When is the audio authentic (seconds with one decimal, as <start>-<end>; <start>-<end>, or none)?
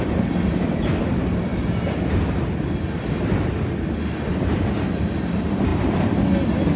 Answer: 0.0-6.8